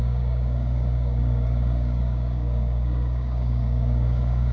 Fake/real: fake